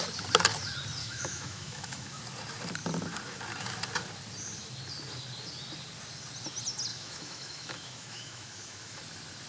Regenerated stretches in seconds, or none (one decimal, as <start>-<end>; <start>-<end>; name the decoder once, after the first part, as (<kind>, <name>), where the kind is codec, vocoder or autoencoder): 1.0-2.2 (autoencoder, DAC-VAE); 6.9-9.0